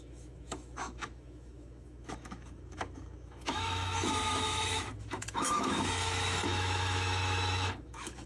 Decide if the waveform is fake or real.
fake